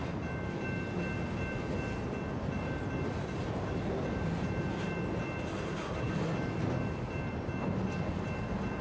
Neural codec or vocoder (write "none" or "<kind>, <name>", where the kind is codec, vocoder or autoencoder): none